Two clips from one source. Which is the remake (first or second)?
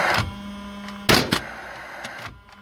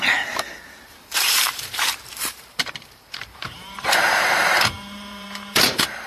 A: second